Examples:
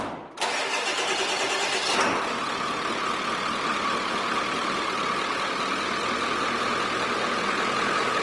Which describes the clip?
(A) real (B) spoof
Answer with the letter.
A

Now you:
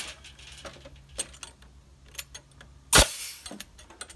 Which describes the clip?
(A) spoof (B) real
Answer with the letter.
B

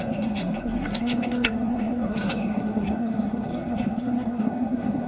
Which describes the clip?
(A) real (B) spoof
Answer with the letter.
B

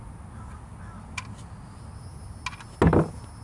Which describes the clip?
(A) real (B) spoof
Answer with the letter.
A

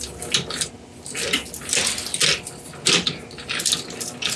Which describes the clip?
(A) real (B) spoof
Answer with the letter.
A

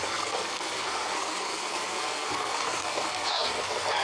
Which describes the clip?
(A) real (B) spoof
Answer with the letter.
B